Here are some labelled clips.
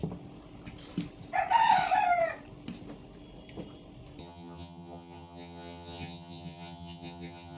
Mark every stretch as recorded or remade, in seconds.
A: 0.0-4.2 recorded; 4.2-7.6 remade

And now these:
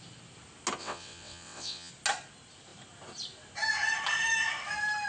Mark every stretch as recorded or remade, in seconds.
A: 0.0-0.8 recorded; 0.8-1.9 remade; 1.9-5.1 recorded